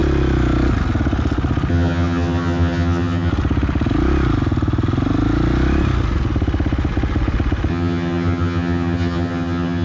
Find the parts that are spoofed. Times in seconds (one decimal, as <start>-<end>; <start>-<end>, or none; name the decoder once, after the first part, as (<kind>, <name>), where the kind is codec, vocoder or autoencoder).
1.7-3.3 (vocoder, HiFi-GAN); 7.7-9.8